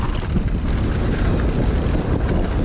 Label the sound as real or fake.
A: real